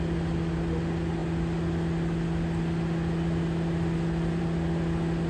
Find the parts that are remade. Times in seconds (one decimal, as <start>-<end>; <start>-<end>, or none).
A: none